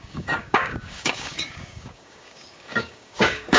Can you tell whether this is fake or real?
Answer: fake